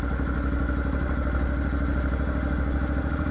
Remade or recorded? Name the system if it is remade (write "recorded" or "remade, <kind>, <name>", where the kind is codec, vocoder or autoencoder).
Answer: recorded